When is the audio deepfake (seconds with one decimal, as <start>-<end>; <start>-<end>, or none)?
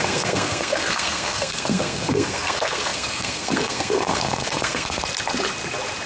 0.0-5.0